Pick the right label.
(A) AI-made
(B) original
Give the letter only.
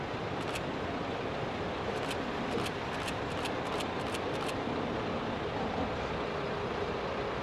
B